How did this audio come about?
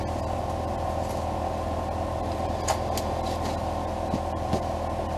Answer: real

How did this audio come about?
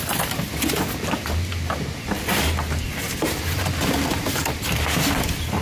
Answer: real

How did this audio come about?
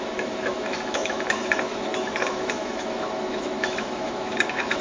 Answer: fake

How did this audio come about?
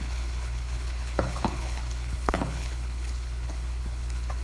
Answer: fake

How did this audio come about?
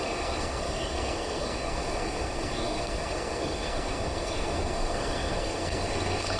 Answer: fake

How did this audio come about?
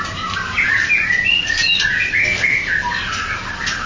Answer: real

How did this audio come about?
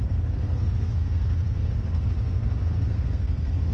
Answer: fake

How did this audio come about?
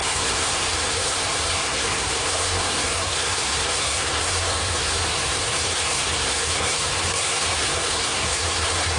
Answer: fake